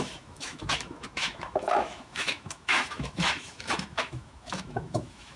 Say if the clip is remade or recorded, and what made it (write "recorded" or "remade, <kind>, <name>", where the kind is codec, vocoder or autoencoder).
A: remade, autoencoder, DAC-VAE